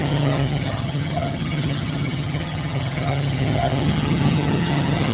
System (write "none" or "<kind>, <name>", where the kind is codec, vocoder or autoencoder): vocoder, HiFi-GAN